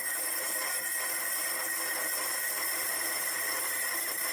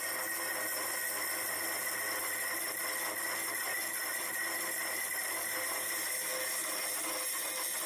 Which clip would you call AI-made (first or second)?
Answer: first